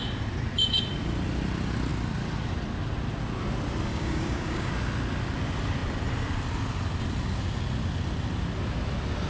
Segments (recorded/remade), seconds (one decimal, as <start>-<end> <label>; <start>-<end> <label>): 0.0-3.9 recorded; 3.9-4.7 remade; 4.7-9.3 recorded